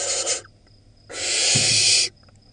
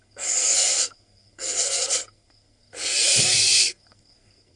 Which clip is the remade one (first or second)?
second